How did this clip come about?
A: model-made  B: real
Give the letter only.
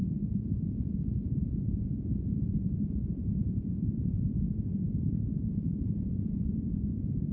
A